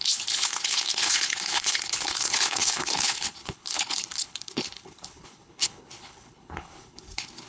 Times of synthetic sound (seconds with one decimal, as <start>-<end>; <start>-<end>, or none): 0.0-7.5